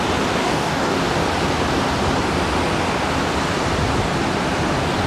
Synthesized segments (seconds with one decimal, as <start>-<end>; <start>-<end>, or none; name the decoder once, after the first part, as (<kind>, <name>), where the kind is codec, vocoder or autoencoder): 0.4-1.0 (codec, DAC)